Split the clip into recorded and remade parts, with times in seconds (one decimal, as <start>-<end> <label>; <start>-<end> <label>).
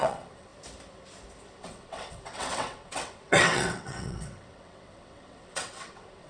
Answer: 0.0-0.5 remade; 0.5-1.6 recorded; 1.6-6.3 remade